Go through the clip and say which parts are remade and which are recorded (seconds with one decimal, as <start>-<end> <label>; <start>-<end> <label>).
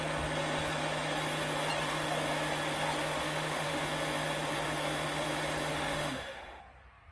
0.0-3.2 recorded; 3.2-3.8 remade; 3.8-5.7 recorded; 5.7-6.6 remade; 6.6-7.1 recorded